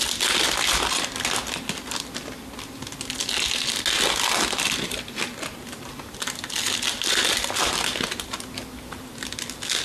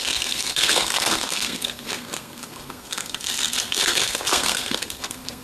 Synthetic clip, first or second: second